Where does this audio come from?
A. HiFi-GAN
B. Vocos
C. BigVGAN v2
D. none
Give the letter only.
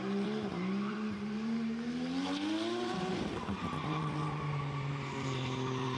C